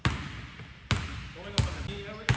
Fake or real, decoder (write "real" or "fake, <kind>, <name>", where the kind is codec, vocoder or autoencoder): real